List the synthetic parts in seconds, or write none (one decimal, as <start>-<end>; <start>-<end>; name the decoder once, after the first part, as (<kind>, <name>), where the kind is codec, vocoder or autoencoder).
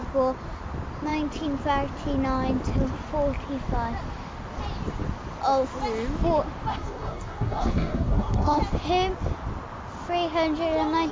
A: 6.7-8.6 (codec, SNAC)